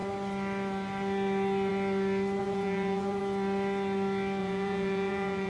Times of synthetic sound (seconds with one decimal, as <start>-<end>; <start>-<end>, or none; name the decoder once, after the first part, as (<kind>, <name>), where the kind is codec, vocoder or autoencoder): 2.4-3.2 (vocoder, Vocos); 4.4-5.5